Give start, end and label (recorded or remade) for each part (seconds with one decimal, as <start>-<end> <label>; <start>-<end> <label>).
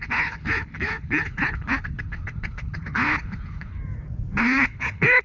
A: 0.0-3.8 remade; 3.8-4.4 recorded; 4.4-5.2 remade